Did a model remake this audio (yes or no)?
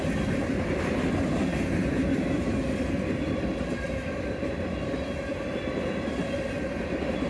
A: no